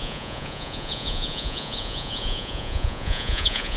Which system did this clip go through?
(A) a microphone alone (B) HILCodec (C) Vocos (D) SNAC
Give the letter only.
C